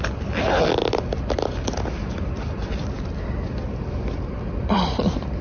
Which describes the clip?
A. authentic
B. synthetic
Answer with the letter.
B